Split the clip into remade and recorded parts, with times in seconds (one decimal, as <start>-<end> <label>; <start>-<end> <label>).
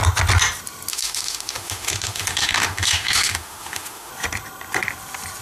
0.0-0.9 recorded; 0.9-4.1 remade; 4.1-5.4 recorded